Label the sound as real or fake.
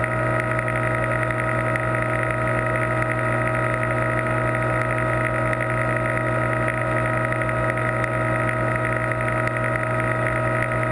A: real